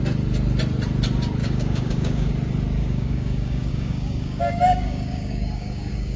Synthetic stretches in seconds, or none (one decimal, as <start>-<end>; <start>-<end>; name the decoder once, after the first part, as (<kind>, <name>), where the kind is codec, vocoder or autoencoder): 1.4-2.3 (codec, DAC); 2.8-6.2